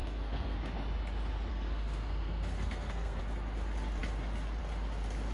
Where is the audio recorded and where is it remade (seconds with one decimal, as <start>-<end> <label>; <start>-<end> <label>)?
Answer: 0.0-0.6 remade; 0.6-1.5 recorded; 1.5-3.2 remade; 3.2-5.3 recorded